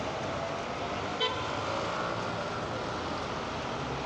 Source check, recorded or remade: recorded